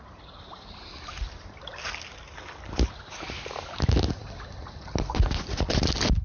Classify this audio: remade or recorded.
recorded